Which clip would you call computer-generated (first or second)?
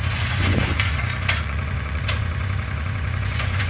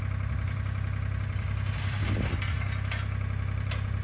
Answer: first